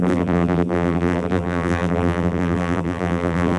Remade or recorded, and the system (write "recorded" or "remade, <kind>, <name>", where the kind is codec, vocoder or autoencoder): remade, vocoder, BigVGAN v2